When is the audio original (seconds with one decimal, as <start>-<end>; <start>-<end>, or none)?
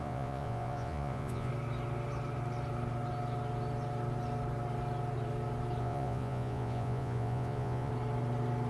1.5-5.8; 7.9-8.7